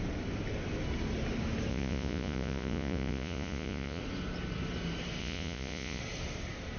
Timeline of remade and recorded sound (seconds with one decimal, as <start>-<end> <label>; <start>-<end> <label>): 0.0-1.7 recorded; 1.7-4.0 remade; 4.0-5.2 recorded; 5.2-6.0 remade; 6.0-6.8 recorded